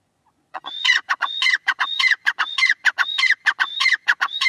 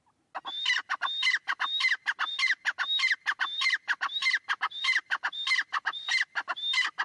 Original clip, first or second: second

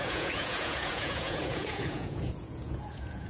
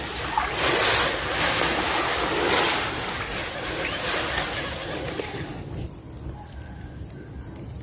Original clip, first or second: second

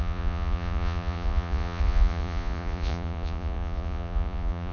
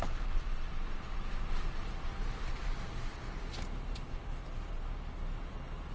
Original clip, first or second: second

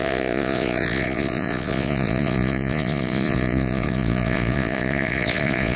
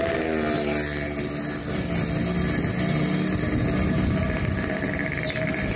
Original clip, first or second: second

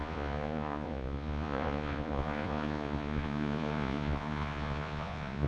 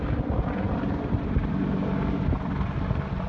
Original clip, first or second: second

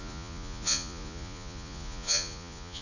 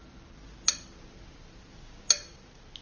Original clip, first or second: second